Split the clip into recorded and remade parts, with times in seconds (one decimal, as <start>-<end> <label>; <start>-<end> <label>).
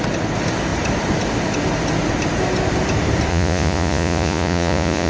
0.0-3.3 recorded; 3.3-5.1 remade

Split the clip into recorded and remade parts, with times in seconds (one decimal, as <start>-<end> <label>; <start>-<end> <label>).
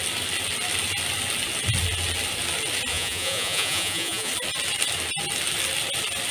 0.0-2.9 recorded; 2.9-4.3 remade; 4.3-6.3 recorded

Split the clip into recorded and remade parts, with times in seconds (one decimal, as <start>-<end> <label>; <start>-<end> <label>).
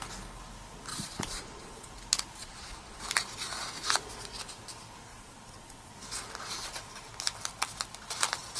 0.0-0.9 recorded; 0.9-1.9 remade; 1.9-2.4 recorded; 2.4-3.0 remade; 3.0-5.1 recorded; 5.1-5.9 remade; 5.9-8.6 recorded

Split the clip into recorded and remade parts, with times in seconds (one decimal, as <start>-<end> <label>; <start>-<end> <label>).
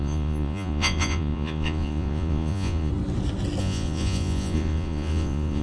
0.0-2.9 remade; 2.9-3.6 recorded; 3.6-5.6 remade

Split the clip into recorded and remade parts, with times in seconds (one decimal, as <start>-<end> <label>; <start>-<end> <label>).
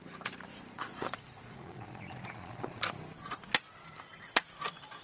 0.0-0.5 recorded; 0.5-2.9 remade; 2.9-5.0 recorded